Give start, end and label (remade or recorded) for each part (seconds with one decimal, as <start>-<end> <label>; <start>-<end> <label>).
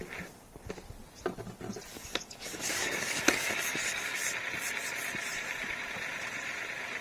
0.0-1.9 recorded; 1.9-4.2 remade; 4.2-7.0 recorded